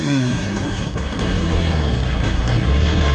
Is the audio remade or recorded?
remade